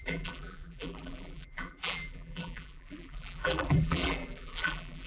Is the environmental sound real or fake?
fake